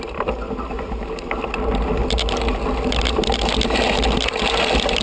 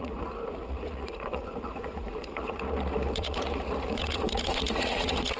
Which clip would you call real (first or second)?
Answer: first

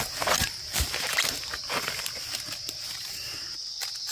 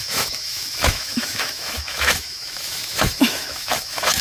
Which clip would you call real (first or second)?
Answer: first